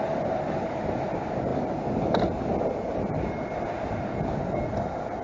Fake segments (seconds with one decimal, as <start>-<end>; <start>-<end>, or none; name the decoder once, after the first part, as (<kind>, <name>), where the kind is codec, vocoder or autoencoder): none